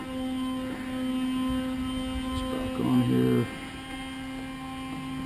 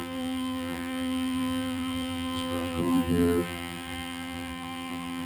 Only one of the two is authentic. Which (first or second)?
first